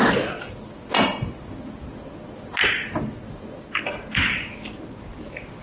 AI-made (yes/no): no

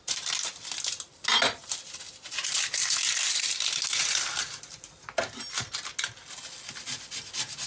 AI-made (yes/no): no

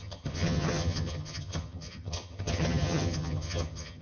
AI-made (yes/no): yes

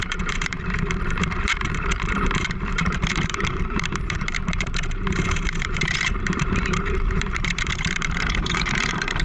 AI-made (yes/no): yes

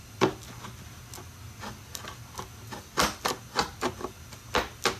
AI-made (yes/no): no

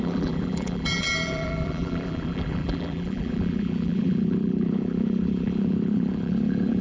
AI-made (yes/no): yes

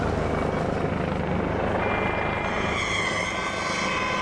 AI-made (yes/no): no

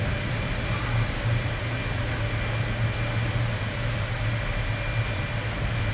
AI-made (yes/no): no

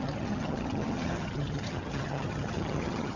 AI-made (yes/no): yes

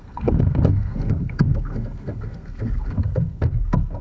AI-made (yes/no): yes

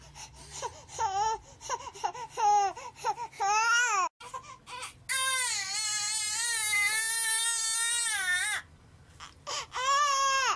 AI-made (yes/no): no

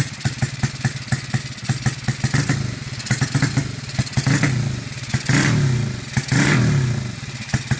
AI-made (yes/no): no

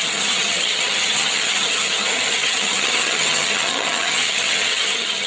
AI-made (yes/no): yes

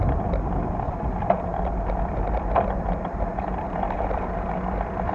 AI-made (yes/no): yes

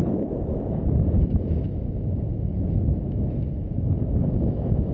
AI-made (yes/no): yes